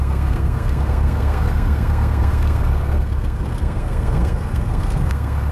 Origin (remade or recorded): remade